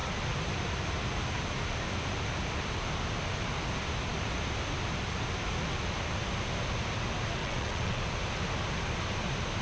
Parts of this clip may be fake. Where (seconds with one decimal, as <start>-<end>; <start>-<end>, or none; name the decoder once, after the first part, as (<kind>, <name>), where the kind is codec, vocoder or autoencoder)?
7.4-8.0 (vocoder, WaveNeXt)